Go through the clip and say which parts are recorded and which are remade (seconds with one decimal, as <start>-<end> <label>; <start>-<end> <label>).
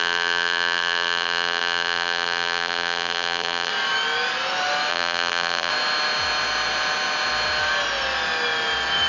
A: 0.0-3.7 remade; 3.7-4.9 recorded; 4.9-5.7 remade; 5.7-9.1 recorded